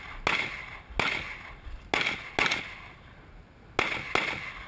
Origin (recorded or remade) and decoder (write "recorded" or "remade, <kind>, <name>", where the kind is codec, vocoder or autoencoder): recorded